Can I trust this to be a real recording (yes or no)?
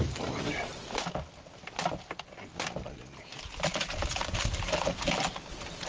yes